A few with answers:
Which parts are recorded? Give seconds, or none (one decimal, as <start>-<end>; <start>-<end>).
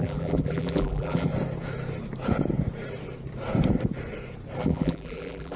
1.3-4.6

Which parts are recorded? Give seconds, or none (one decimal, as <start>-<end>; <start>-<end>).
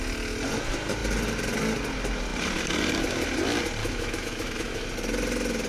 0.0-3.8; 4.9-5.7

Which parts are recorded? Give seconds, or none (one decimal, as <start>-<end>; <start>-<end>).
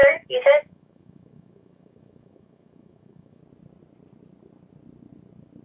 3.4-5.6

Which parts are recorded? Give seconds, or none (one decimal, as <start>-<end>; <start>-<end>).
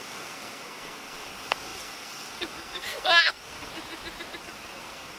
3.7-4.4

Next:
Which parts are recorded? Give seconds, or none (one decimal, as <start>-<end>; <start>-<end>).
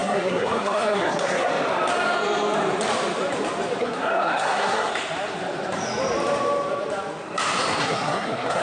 1.5-3.8; 4.9-7.8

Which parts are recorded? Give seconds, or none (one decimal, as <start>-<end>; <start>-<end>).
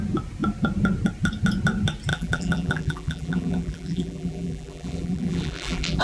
0.0-2.1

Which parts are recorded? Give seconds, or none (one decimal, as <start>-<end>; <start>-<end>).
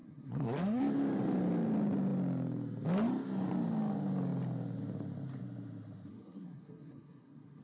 0.8-6.1